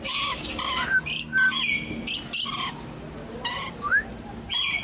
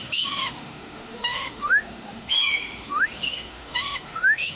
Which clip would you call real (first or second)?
first